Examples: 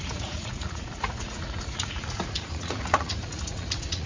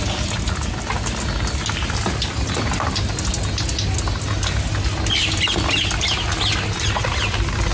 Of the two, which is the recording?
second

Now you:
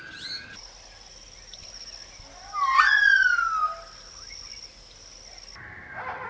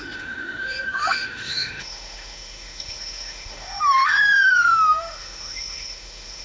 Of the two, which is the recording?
first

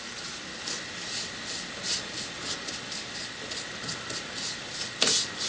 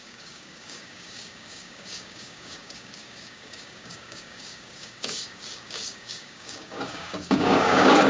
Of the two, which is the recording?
first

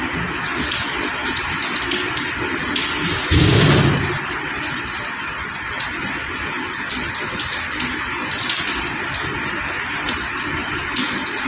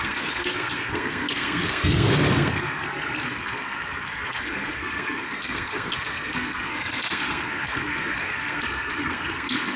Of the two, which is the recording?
first